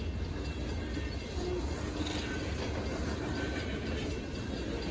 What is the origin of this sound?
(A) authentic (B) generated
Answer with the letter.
A